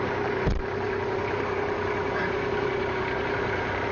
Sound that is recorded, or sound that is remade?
recorded